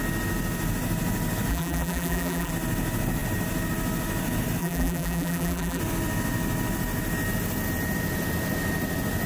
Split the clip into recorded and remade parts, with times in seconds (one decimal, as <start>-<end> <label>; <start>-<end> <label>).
0.0-1.5 recorded; 1.5-2.5 remade; 2.5-4.6 recorded; 4.6-5.8 remade; 5.8-9.3 recorded